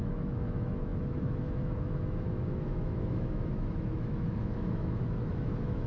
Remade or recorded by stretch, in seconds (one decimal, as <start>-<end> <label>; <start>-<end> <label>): 0.0-5.9 remade